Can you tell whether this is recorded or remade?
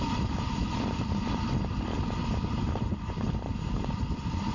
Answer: recorded